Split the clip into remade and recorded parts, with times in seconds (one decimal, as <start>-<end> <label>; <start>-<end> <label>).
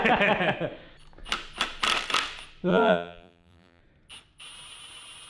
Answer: 0.0-2.7 recorded; 2.7-3.8 remade; 3.8-5.3 recorded